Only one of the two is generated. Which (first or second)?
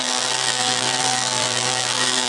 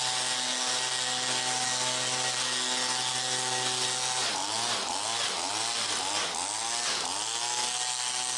first